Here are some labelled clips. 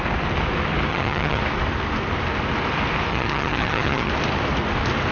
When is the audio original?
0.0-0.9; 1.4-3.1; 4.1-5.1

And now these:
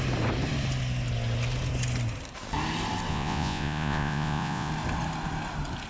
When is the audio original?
0.0-3.1; 4.7-5.9

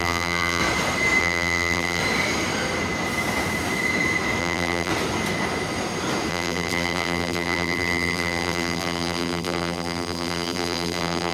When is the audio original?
0.6-1.2; 2.0-4.4; 4.9-6.3

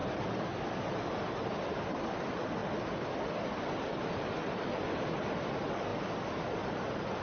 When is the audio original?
0.0-2.6; 3.1-5.9; 6.5-7.2